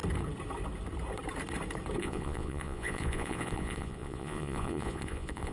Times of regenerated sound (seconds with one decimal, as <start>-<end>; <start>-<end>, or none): 2.0-5.5